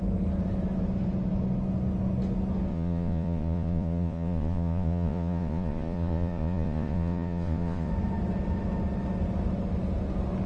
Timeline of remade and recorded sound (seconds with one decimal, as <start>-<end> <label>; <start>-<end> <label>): 0.0-2.7 recorded; 2.7-7.9 remade; 7.9-10.5 recorded